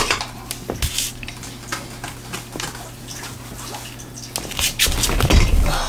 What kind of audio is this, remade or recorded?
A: recorded